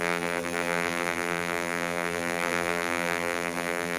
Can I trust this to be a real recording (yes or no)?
no